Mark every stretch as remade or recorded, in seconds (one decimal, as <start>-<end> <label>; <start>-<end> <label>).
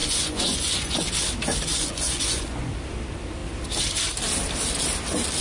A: 0.0-1.0 remade; 1.0-1.7 recorded; 1.7-2.7 remade; 2.7-5.4 recorded